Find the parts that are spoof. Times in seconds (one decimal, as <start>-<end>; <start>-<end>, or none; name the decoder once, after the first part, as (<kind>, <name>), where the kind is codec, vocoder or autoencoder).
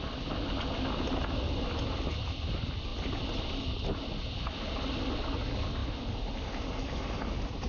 none